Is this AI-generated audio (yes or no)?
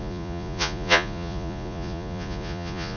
yes